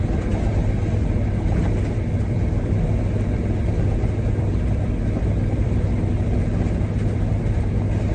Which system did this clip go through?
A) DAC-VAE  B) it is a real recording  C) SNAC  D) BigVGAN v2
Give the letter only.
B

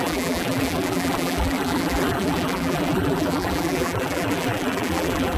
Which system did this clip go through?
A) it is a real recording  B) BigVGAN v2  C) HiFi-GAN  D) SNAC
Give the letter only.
B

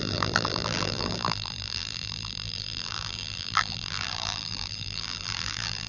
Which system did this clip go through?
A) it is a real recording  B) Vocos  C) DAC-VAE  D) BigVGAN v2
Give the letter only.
D